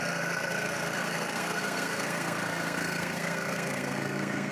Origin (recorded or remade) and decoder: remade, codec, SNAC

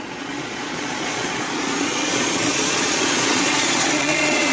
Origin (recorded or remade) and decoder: remade, vocoder, Vocos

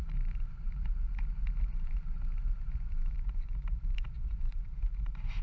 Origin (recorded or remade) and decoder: remade, vocoder, BigVGAN v2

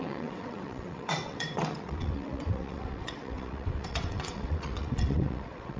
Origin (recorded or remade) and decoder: remade, vocoder, WaveNeXt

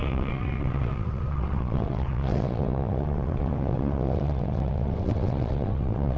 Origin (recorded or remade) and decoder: remade, vocoder, WaveNeXt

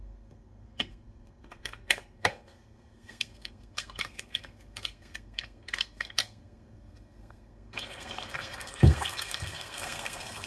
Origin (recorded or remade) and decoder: remade, codec, SNAC